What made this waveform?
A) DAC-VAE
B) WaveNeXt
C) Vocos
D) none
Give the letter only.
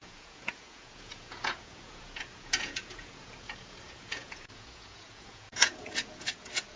C